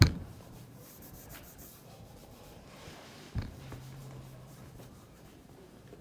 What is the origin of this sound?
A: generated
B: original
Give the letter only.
A